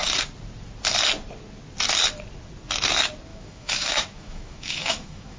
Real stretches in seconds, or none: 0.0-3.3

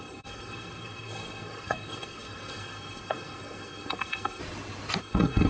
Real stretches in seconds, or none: 4.4-5.0

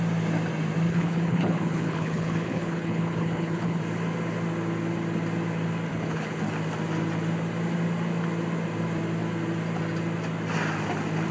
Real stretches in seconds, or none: 0.0-0.9; 3.8-5.9; 6.4-11.3

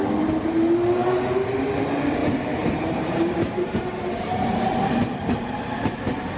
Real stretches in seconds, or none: 0.0-2.2; 6.0-6.4